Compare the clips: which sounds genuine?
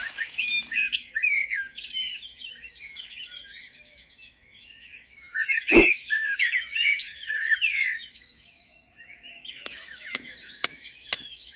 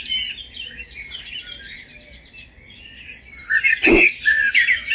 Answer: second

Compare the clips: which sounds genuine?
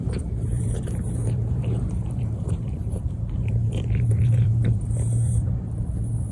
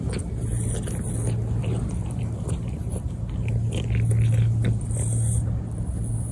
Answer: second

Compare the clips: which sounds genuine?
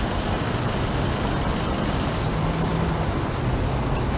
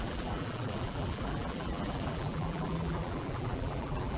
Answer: first